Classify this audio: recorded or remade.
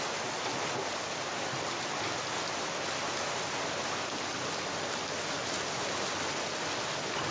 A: recorded